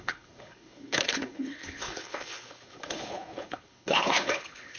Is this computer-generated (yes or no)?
yes